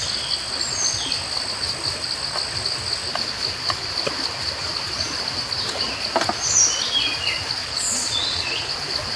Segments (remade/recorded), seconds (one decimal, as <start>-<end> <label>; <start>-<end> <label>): 0.0-7.7 recorded; 7.7-8.7 remade; 8.7-9.2 recorded